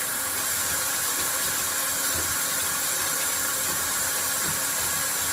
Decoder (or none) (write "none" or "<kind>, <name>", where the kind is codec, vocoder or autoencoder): none